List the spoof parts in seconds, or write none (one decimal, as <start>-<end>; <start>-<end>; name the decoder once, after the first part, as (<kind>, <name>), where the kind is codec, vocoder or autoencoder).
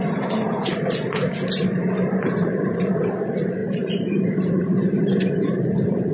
1.8-3.1 (vocoder, BigVGAN v2); 3.6-6.1